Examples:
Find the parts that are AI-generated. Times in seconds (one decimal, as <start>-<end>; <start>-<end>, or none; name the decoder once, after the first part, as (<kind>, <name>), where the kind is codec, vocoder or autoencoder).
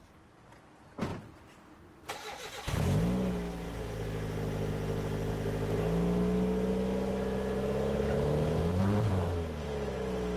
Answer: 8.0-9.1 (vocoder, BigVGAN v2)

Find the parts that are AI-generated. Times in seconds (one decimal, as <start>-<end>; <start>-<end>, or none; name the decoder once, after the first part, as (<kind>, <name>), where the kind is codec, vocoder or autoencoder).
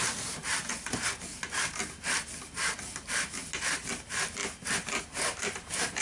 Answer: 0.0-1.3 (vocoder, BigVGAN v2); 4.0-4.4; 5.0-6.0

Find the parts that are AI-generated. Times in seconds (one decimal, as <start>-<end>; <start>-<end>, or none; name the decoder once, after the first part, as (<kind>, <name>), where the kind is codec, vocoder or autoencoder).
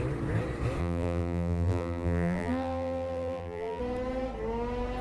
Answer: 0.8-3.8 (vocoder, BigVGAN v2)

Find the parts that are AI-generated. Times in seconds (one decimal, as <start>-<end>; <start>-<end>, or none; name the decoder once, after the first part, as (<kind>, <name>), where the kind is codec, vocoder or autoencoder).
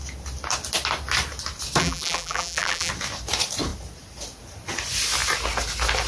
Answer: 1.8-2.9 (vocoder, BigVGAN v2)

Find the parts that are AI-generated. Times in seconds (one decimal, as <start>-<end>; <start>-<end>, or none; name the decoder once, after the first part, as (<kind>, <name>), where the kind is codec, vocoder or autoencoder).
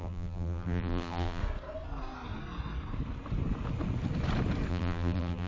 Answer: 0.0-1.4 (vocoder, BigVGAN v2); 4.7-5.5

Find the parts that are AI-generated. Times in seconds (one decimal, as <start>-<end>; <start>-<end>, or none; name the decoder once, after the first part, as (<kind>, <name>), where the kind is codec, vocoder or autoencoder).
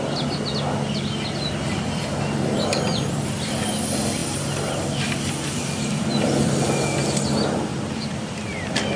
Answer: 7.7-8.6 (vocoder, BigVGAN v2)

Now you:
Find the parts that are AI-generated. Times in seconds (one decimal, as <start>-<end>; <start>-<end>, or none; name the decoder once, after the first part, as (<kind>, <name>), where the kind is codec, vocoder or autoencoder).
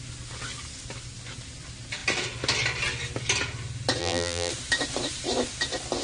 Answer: 4.0-4.5 (vocoder, BigVGAN v2)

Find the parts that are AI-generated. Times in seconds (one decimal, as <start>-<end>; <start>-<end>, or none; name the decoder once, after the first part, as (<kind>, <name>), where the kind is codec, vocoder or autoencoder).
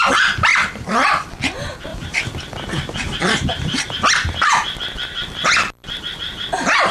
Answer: 0.5-1.3 (vocoder, BigVGAN v2); 1.9-6.0